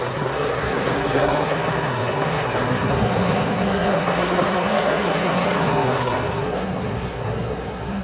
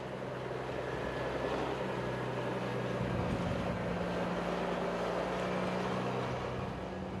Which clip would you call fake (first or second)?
first